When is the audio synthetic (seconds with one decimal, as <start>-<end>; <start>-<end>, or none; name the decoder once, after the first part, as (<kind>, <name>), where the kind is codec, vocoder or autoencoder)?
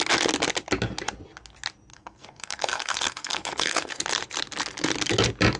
1.9-4.0 (codec, SNAC)